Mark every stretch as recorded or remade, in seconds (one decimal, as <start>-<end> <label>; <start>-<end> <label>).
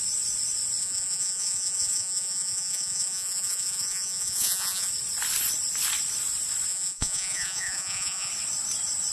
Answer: 0.0-0.8 recorded; 0.8-4.9 remade; 4.9-6.7 recorded; 6.7-8.3 remade; 8.3-9.1 recorded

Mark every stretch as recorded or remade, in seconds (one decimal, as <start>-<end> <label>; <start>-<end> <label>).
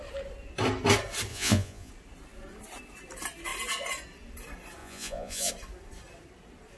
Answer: 0.0-1.3 recorded; 1.3-1.9 remade; 1.9-4.8 recorded; 4.8-5.5 remade; 5.5-6.8 recorded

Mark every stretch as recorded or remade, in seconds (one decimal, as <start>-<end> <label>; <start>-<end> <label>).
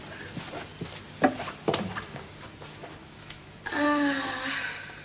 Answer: 0.0-3.0 recorded; 3.0-3.6 remade; 3.6-5.0 recorded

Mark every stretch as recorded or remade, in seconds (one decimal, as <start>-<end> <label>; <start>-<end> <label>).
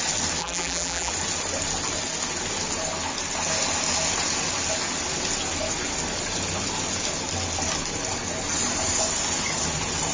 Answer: 0.0-0.4 recorded; 0.4-1.1 remade; 1.1-10.1 recorded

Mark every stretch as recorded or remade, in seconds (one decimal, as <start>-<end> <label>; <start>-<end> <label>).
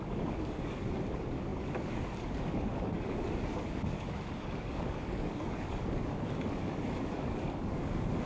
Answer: 0.0-8.3 remade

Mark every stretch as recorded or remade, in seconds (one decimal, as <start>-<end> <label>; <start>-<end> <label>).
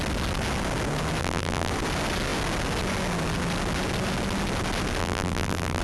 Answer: 0.0-1.2 recorded; 1.2-1.7 remade; 1.7-5.0 recorded; 5.0-5.8 remade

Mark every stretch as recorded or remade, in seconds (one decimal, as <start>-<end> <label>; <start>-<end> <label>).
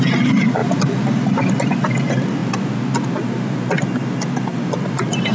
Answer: 0.0-5.3 recorded